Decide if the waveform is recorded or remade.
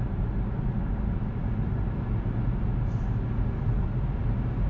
recorded